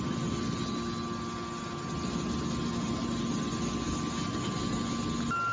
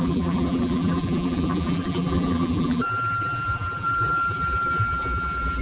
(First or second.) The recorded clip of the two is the first